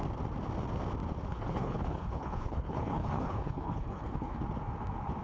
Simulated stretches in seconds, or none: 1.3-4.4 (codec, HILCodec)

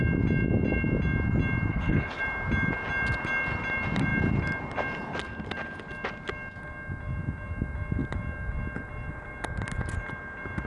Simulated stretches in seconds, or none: 1.7-2.2 (codec, HILCodec)

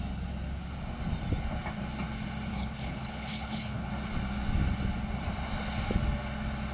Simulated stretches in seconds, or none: 2.5-3.9 (codec, HILCodec)

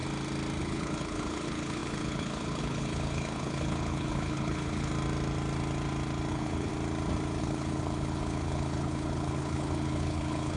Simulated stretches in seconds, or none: 0.6-4.9 (codec, HILCodec); 6.3-6.7; 7.4-10.6

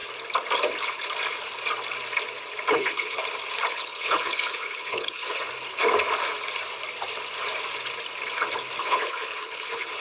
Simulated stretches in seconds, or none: 2.7-3.2 (codec, HILCodec); 3.7-5.4; 8.8-10.0